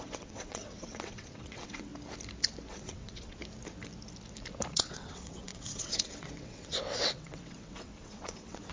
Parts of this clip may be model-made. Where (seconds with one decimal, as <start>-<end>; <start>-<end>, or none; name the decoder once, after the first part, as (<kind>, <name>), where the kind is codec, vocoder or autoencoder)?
0.0-1.9 (vocoder, WaveNeXt); 2.7-3.4; 4.7-8.7